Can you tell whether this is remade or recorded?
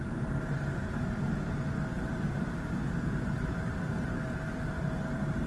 remade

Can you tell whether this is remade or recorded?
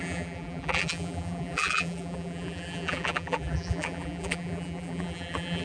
remade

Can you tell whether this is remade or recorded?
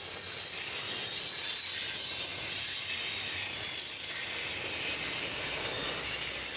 recorded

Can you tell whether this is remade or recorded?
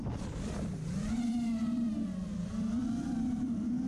remade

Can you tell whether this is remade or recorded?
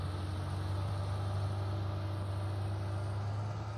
recorded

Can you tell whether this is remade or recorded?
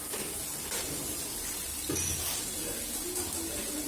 recorded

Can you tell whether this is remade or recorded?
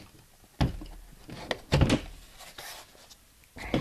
recorded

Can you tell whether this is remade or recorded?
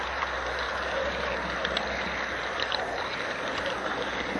recorded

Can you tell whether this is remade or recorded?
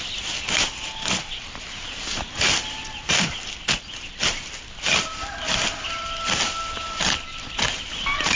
recorded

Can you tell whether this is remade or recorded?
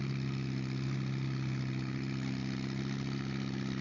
recorded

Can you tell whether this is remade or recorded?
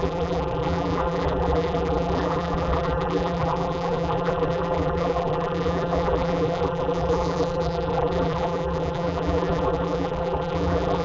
remade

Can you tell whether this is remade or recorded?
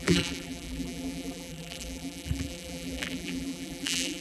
remade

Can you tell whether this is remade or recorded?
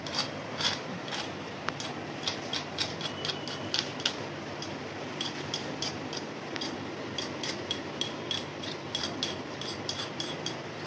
remade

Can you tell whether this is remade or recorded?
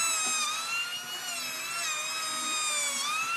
recorded